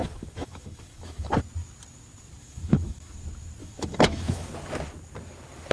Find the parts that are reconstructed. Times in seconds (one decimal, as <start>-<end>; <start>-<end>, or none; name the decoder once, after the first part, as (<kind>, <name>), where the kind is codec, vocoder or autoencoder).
0.0-1.3 (autoencoder, DAC-VAE); 2.4-3.1; 3.6-4.5